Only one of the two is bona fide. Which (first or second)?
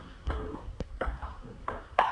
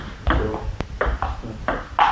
second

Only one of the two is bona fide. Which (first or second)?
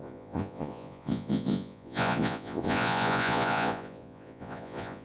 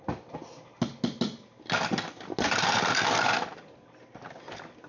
second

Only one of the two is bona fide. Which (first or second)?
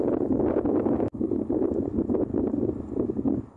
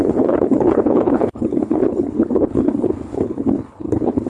first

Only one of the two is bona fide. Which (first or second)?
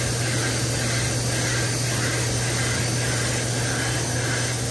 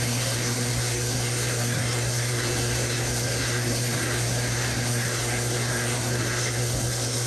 first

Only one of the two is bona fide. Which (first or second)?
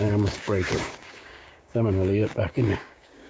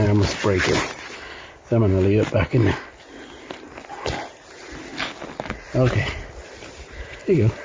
second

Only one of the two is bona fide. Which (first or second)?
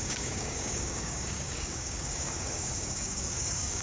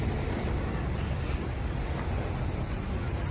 second